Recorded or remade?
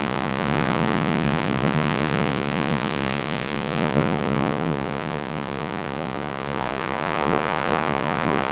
remade